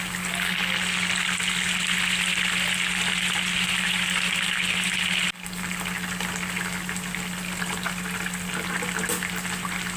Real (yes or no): yes